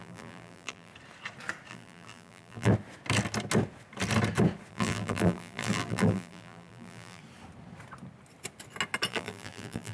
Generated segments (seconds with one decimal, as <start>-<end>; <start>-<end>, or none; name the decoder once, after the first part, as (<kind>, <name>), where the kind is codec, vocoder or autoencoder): 0.0-0.9 (vocoder, BigVGAN v2); 1.7-2.7; 4.7-7.2; 9.1-9.9